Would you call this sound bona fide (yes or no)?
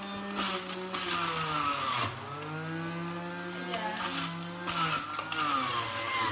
yes